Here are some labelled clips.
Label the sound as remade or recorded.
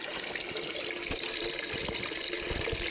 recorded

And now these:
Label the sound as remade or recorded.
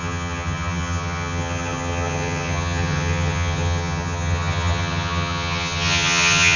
remade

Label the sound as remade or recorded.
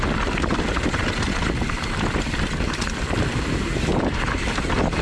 recorded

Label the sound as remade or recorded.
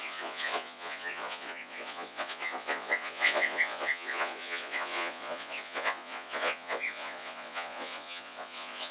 remade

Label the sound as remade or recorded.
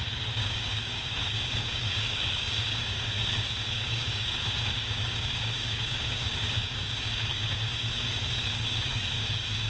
remade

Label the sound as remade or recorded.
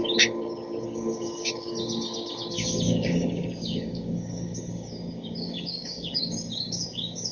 remade